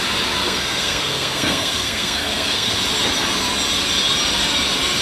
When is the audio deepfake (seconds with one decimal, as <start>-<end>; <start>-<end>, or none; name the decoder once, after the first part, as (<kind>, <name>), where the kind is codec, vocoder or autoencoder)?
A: 0.4-2.7 (codec, SNAC)